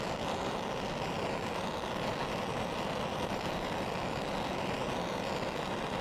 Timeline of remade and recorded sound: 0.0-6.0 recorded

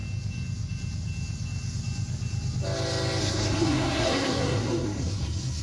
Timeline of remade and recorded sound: 0.0-3.2 recorded; 3.2-5.6 remade

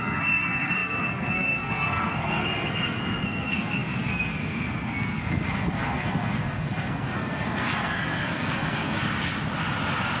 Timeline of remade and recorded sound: 0.0-9.0 remade; 9.0-10.2 recorded

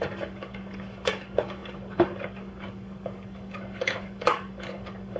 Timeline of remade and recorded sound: 0.0-5.2 remade